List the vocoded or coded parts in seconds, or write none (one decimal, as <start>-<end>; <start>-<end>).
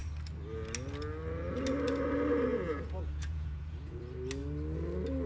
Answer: 2.5-4.0